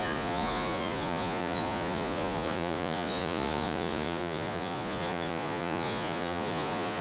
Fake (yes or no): yes